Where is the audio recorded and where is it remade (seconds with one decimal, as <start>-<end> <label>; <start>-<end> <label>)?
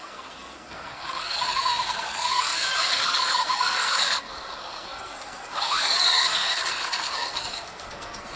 0.0-8.4 remade